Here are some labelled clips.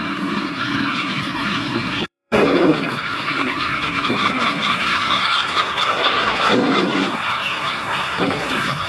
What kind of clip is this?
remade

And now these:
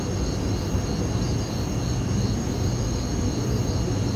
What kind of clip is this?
recorded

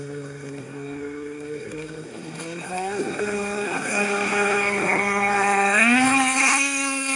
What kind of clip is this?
remade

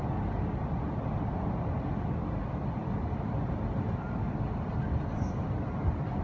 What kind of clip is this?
remade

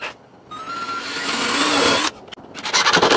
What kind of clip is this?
recorded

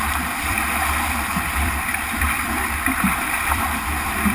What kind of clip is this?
remade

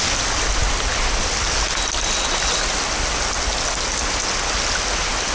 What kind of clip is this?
recorded